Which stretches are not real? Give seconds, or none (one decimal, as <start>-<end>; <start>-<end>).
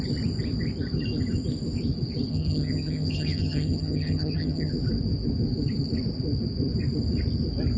2.3-4.7